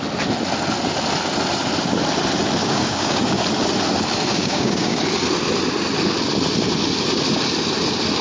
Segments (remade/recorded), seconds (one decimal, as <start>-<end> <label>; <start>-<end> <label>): 0.0-2.6 recorded; 2.6-3.4 remade; 3.4-4.3 recorded; 4.3-5.0 remade; 5.0-8.2 recorded